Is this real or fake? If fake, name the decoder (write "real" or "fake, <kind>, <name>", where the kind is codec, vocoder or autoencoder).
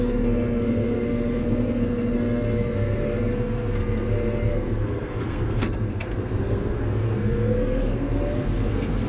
fake, codec, SNAC